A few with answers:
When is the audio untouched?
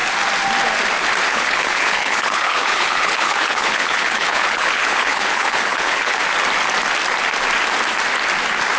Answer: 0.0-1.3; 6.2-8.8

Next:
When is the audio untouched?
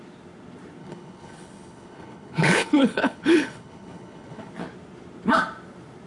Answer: 0.0-0.8; 4.5-6.1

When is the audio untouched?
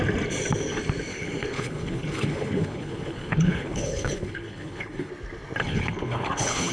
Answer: 0.0-1.1; 5.1-5.6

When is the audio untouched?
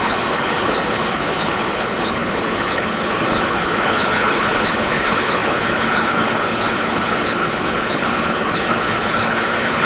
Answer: none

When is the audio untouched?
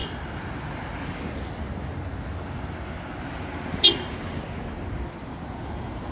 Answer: 0.0-6.1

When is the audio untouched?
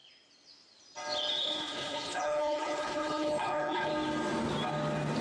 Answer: 0.0-1.4; 3.9-5.2